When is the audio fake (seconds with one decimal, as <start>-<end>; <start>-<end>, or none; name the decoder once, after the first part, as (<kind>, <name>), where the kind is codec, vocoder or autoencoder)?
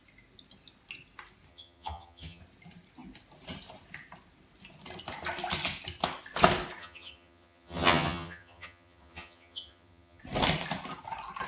1.5-2.4 (vocoder, HiFi-GAN); 6.8-10.2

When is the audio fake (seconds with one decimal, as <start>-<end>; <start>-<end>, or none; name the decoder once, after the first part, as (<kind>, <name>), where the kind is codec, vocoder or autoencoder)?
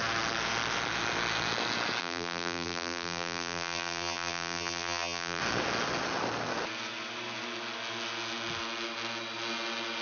2.0-5.4 (vocoder, BigVGAN v2)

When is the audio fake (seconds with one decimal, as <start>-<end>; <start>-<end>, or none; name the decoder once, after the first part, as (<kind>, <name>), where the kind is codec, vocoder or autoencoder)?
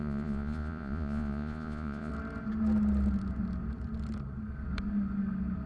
0.0-2.1 (vocoder, Vocos)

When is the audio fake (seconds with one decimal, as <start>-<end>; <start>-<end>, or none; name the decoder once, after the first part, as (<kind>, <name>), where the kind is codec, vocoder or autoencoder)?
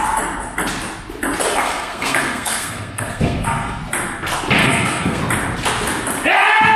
1.5-3.8 (codec, SNAC); 4.6-5.2